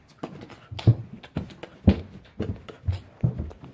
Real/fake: real